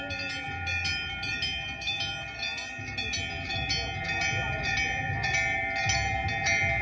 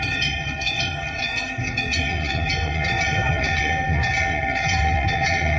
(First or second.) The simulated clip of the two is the second